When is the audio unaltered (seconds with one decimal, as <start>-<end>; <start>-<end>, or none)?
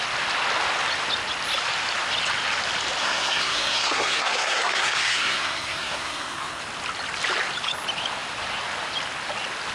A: 0.0-3.0; 6.6-9.7